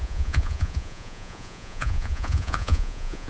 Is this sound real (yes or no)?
no